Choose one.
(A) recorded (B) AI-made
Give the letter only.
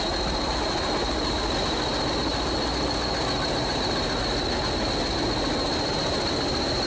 A